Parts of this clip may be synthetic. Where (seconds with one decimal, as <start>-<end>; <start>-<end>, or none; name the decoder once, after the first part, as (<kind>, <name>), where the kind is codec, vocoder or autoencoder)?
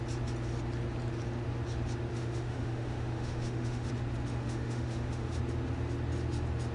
2.1-3.9 (autoencoder, DAC-VAE); 4.4-5.4